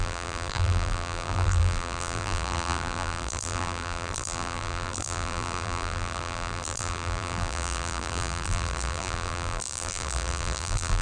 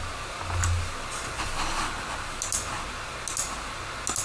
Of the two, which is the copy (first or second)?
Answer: first